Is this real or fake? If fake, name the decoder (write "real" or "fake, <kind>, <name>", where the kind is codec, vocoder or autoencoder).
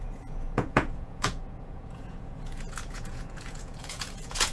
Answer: fake, vocoder, Vocos